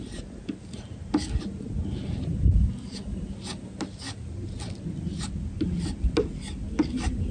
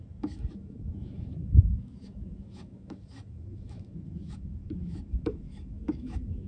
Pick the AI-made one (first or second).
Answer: second